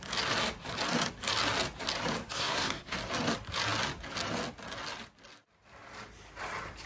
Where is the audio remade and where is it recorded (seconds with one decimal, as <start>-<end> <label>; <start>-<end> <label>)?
0.0-2.2 recorded; 2.2-3.0 remade; 3.0-6.9 recorded